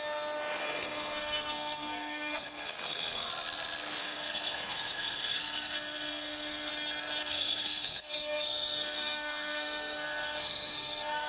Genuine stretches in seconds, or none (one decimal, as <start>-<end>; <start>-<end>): 0.0-0.6; 3.3-4.0; 6.7-7.2